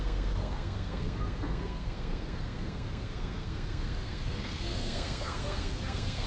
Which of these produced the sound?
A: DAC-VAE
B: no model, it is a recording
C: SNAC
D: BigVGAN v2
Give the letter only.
C